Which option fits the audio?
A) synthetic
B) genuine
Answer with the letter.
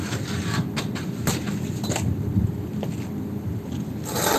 B